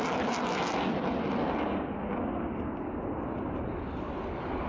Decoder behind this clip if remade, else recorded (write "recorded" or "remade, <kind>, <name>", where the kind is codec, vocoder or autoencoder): recorded